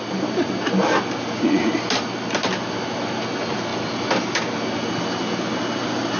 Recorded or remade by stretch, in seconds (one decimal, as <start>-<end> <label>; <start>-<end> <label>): 0.0-6.2 recorded